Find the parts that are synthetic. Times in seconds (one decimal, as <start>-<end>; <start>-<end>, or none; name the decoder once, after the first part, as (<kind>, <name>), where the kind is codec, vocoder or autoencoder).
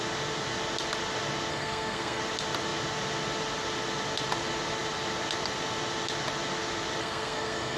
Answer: 1.5-2.2 (codec, SNAC); 7.0-7.8